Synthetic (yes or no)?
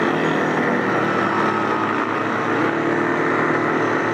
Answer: no